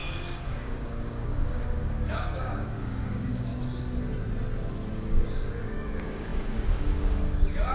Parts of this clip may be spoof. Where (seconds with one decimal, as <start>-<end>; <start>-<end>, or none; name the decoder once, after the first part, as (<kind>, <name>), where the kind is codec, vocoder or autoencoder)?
0.0-3.5 (codec, DAC); 4.9-7.7